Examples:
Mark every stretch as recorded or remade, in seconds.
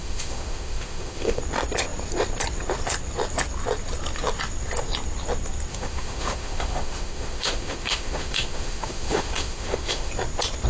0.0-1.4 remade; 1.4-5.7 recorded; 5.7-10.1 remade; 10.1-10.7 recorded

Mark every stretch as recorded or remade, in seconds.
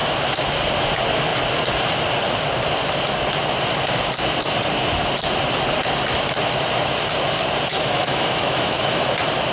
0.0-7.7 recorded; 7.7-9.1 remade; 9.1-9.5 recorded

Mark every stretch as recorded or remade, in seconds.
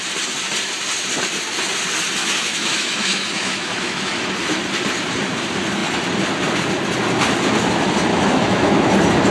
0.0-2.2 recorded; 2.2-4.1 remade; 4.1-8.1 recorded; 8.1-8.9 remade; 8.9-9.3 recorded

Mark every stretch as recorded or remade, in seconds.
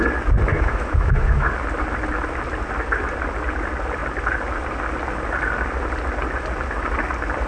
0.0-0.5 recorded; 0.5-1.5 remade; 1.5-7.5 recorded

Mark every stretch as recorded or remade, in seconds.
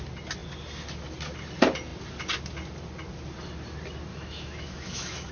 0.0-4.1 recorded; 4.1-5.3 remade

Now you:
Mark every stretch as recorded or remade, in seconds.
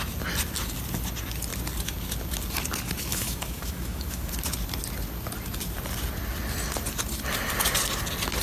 0.0-3.1 recorded; 3.1-4.3 remade; 4.3-8.4 recorded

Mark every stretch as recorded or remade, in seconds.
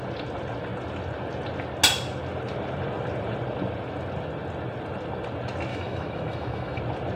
0.0-5.7 recorded; 5.7-6.8 remade; 6.8-7.2 recorded